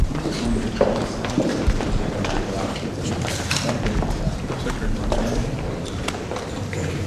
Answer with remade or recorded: remade